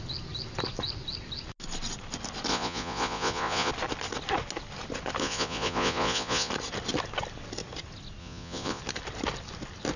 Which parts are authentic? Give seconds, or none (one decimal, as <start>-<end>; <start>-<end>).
0.0-2.5; 3.7-5.2; 6.5-8.2; 8.8-10.0